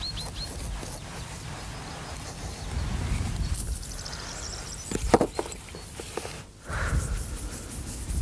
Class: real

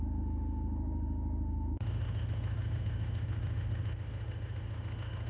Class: fake